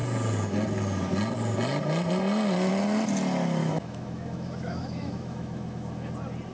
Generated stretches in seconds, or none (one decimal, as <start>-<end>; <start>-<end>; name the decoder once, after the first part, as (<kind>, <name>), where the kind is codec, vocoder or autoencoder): 3.6-6.1 (autoencoder, DAC-VAE)